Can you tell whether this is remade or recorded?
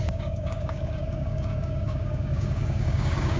remade